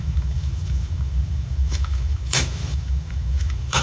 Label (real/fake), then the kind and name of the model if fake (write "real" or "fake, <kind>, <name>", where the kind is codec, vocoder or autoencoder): fake, autoencoder, DAC-VAE